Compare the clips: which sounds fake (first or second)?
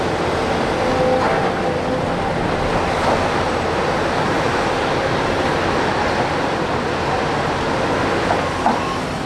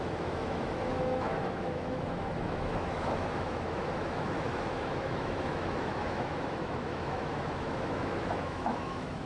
second